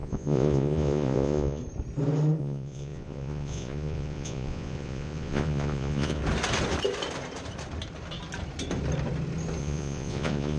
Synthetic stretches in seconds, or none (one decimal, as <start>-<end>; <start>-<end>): 0.0-1.6; 2.4-6.2; 9.6-10.6